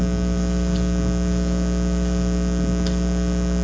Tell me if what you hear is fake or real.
real